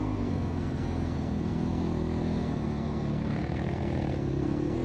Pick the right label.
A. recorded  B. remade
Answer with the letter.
B